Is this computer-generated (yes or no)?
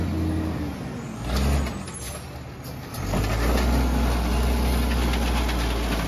no